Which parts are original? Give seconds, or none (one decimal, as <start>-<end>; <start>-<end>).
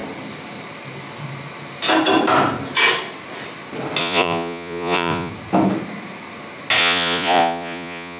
0.0-4.0; 5.3-6.8